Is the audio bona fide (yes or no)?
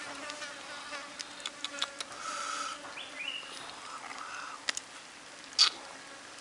yes